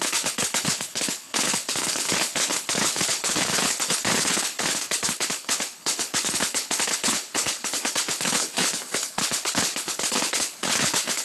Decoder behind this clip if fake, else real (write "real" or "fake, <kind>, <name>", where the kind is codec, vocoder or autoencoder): fake, codec, HILCodec